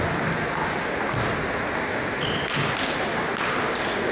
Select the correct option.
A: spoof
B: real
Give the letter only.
B